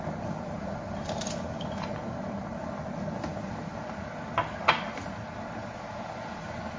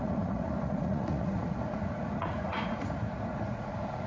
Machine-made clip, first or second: second